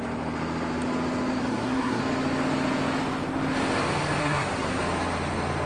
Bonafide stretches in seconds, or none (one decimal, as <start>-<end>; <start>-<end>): 0.0-1.4; 2.0-4.2; 4.8-5.7